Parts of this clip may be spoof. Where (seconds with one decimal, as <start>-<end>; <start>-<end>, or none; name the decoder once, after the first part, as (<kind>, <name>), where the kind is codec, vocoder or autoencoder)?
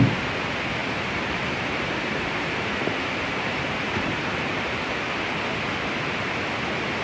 0.8-5.0 (vocoder, BigVGAN v2)